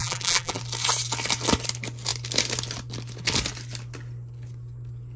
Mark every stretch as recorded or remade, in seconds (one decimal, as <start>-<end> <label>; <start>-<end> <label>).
0.0-0.6 remade; 0.6-5.2 recorded